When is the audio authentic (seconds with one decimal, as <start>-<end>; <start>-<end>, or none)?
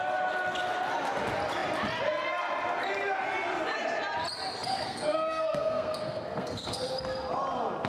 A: 0.0-4.7; 6.9-7.9